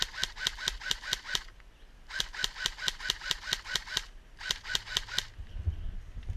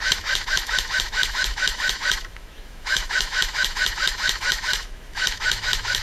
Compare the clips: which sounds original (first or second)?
first